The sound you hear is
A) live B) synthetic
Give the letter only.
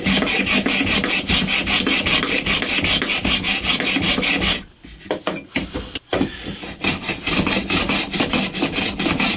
A